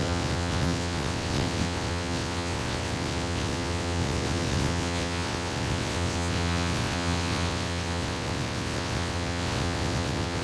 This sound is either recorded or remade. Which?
remade